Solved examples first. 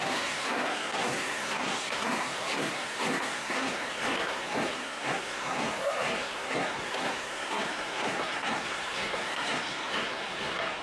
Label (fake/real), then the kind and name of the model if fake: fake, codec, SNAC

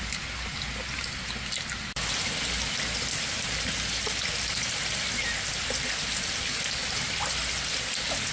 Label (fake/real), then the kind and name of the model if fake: real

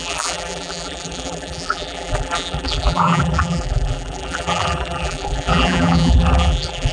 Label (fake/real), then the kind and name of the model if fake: fake, vocoder, BigVGAN v2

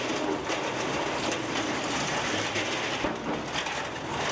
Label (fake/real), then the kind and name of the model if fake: real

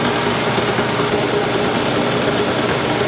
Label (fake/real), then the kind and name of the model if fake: real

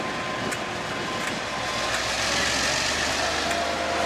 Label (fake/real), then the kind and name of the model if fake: real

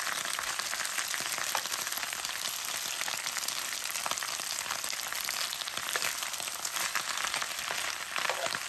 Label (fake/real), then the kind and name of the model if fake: real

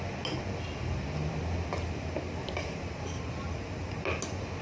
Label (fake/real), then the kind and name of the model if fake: real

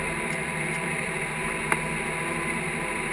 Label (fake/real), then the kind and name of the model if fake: real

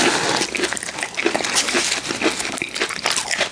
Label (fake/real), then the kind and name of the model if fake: real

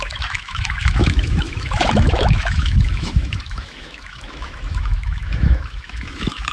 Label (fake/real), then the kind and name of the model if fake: fake, autoencoder, DAC-VAE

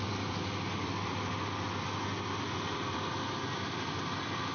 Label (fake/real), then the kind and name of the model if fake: real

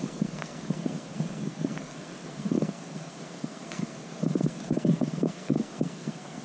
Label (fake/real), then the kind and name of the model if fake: fake, codec, SNAC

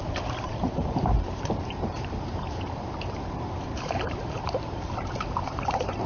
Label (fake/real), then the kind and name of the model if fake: fake, vocoder, BigVGAN v2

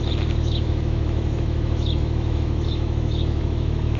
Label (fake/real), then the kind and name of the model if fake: fake, autoencoder, DAC-VAE